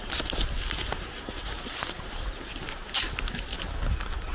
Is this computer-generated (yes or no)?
no